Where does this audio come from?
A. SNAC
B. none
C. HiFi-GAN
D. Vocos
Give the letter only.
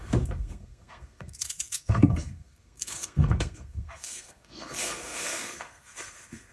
A